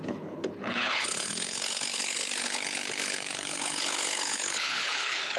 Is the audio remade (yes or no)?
yes